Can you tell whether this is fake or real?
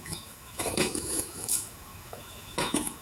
fake